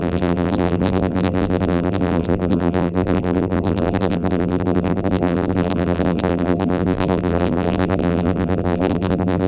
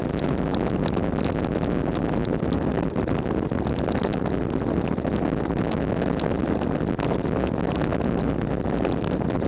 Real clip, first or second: second